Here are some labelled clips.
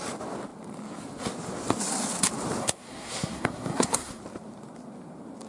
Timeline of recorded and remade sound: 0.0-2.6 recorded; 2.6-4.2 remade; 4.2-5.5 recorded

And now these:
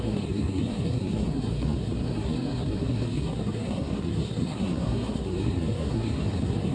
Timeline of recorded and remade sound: 0.0-6.7 remade

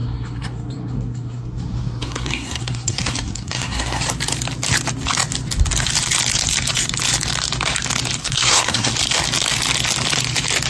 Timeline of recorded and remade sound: 0.0-4.0 remade; 4.0-8.2 recorded; 8.2-8.9 remade; 8.9-10.7 recorded

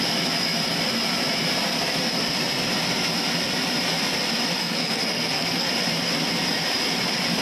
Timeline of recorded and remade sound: 0.0-4.6 recorded; 4.6-5.7 remade; 5.7-7.4 recorded

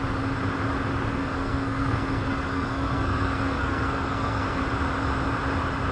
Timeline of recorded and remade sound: 0.0-1.1 recorded; 1.1-4.6 remade; 4.6-5.9 recorded

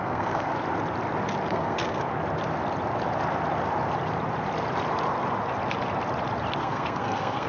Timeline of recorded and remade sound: 0.0-0.5 remade; 0.5-1.5 recorded; 1.5-2.1 remade; 2.1-6.6 recorded; 6.6-7.5 remade

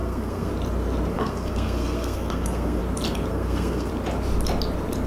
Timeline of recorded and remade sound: 0.0-0.5 remade; 0.5-1.1 recorded; 1.1-2.8 remade; 2.8-3.3 recorded; 3.3-3.9 remade; 3.9-5.1 recorded